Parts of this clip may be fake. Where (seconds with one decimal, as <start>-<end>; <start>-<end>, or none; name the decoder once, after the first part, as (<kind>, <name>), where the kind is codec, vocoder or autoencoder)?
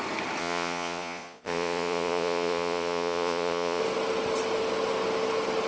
0.4-3.8 (vocoder, Vocos)